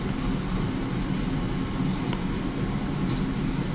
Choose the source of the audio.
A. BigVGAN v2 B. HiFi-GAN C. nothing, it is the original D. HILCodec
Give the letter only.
C